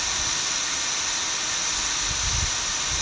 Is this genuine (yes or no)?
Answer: yes